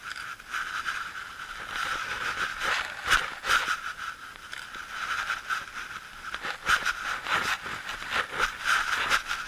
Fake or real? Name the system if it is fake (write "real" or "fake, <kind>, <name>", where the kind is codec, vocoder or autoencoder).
real